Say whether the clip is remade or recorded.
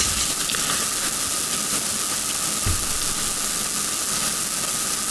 recorded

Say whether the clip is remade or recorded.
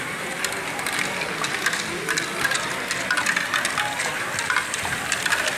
recorded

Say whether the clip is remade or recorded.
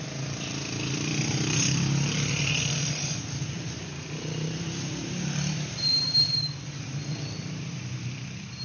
remade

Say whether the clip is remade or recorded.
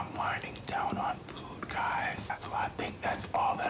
recorded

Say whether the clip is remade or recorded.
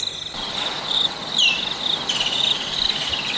recorded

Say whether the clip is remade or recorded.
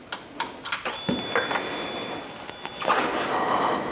recorded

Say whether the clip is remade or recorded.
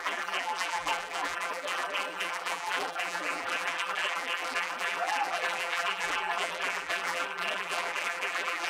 remade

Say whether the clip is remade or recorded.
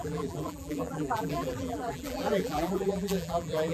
remade